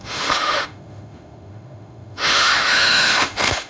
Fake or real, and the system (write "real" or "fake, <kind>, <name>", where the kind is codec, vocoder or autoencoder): fake, autoencoder, DAC-VAE